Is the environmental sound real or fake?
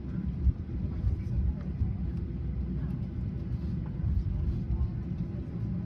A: real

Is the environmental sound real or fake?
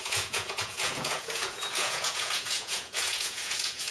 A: fake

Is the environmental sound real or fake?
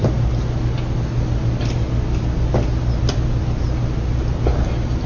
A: real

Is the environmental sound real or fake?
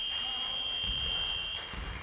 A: fake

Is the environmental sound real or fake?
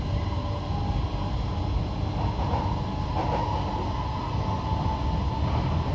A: real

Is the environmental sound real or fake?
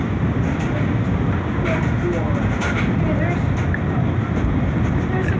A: real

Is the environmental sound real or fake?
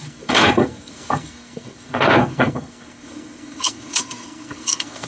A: fake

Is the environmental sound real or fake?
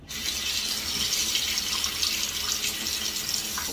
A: real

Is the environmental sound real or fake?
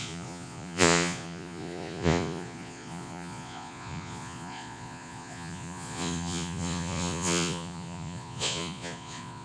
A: fake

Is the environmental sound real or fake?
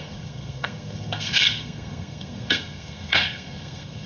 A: fake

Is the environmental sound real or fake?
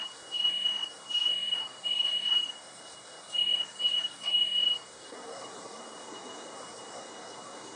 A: fake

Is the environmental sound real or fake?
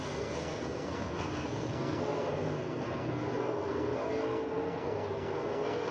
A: fake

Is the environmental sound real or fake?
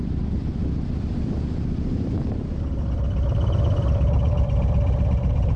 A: fake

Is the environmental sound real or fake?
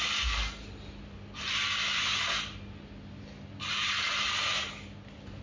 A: real